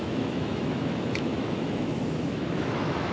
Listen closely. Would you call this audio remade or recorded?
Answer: remade